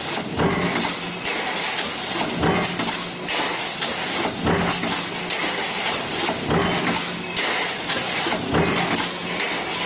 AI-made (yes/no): no